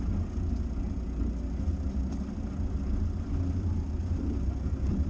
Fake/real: real